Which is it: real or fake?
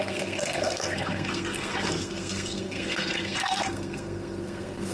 fake